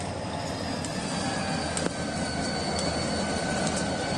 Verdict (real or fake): real